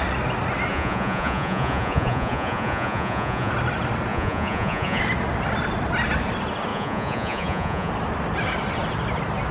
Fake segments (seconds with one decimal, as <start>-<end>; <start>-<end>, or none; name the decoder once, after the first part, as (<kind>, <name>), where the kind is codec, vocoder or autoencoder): 0.7-3.5 (vocoder, Vocos); 4.1-5.0; 6.7-7.9